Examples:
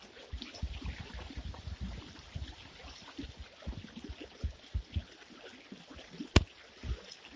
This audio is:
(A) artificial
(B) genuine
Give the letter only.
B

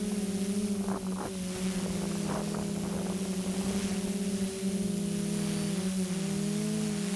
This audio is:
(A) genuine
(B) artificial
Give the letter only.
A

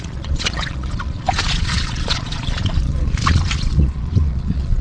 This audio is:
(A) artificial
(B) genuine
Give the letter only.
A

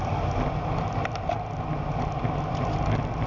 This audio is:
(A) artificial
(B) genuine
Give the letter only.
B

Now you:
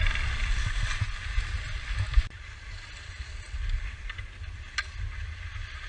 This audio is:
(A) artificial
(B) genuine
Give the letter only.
B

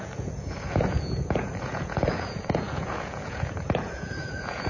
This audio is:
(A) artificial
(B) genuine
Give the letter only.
A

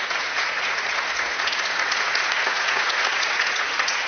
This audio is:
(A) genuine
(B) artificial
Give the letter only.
B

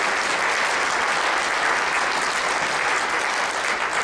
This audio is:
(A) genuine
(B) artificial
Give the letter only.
A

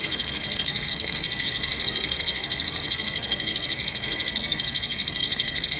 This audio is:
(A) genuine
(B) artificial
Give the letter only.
B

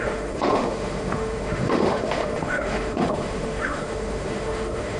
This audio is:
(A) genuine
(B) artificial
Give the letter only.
B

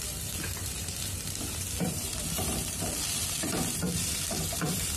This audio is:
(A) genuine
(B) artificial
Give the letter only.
B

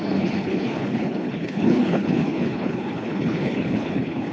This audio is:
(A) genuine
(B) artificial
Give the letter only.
B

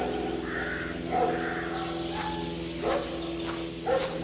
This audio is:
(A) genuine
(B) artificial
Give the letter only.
A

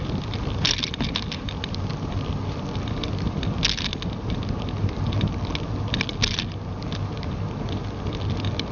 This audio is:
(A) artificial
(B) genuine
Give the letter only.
B